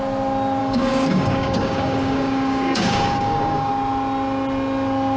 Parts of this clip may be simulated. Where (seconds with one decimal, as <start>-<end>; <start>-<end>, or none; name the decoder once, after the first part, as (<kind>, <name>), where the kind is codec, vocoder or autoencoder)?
0.6-3.7 (codec, DAC)